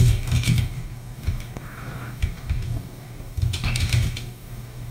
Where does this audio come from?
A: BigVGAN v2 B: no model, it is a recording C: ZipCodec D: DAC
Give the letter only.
D